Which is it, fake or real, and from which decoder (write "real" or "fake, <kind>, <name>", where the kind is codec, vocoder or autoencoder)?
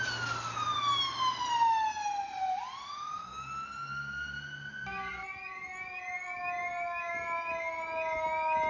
real